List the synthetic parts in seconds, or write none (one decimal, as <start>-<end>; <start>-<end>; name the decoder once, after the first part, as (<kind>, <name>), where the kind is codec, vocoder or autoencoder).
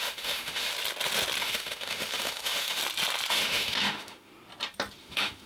0.0-0.7 (autoencoder, DAC-VAE); 1.4-2.8; 3.3-4.3; 5.0-5.5